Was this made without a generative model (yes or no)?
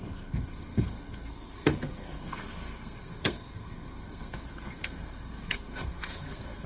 no